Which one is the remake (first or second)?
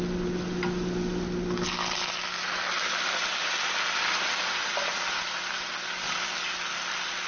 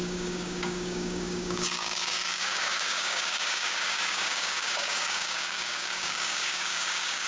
second